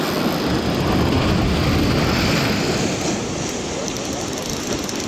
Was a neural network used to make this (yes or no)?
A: no